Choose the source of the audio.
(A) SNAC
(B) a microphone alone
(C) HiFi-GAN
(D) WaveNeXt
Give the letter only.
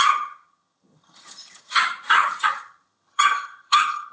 C